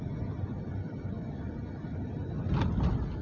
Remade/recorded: recorded